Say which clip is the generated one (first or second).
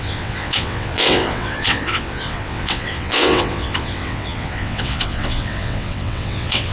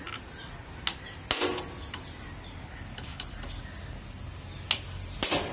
first